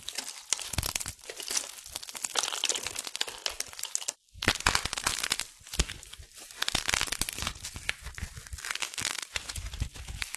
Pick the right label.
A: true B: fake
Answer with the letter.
A